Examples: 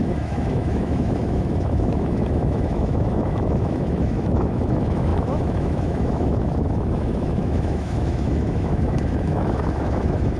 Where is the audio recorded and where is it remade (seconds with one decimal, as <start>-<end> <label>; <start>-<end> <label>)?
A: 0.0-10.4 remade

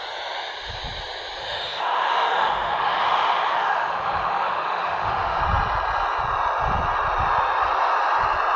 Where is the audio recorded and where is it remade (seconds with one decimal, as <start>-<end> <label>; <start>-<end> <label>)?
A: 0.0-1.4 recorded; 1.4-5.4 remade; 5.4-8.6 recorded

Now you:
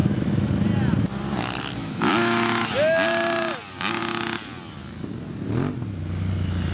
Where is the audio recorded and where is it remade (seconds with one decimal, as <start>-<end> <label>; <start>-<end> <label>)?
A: 0.0-0.5 remade; 0.5-1.8 recorded; 1.8-2.7 remade; 2.7-6.7 recorded

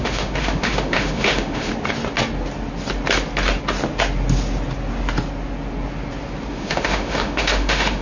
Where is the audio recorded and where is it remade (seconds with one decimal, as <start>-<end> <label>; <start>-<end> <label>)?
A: 0.0-1.7 remade; 1.7-6.5 recorded; 6.5-8.0 remade

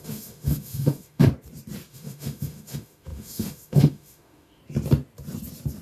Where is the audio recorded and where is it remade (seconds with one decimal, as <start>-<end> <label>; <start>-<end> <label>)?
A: 0.0-1.3 remade; 1.3-1.9 recorded; 1.9-4.6 remade; 4.6-5.8 recorded

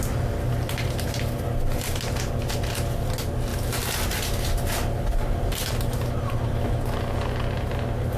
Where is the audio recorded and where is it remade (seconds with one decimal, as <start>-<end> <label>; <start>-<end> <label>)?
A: 0.0-8.2 recorded

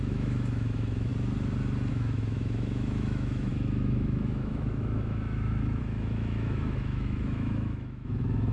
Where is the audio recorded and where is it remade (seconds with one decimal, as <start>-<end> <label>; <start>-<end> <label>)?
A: 0.0-1.1 remade; 1.1-1.9 recorded; 1.9-8.5 remade